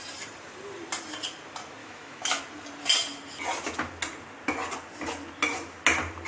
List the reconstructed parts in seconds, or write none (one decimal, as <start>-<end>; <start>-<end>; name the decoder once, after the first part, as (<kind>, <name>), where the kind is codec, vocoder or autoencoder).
1.8-2.4 (autoencoder, DAC-VAE)